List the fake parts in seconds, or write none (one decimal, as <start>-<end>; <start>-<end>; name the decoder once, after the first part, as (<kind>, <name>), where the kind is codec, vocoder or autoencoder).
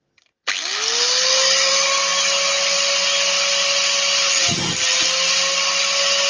none